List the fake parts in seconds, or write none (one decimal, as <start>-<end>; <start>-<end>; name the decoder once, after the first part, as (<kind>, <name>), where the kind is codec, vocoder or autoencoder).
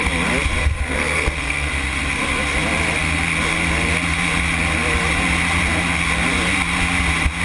0.6-1.7 (codec, SNAC)